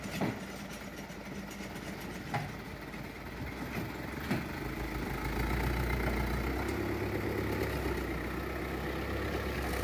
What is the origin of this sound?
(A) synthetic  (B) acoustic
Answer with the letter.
B